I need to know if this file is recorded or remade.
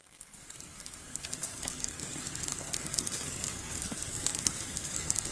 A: remade